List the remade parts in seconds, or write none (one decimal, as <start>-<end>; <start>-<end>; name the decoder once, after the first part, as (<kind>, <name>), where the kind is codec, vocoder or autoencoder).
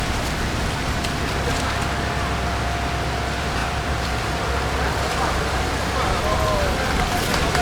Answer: 3.6-4.2 (vocoder, BigVGAN v2)